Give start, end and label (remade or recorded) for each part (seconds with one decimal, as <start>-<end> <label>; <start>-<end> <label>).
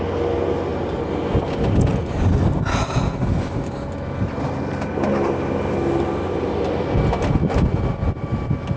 0.0-8.8 recorded